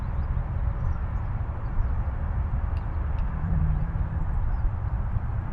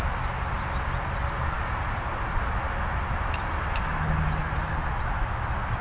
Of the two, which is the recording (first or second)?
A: second